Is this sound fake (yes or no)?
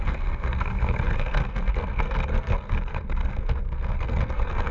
yes